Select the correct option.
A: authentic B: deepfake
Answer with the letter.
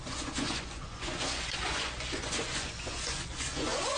B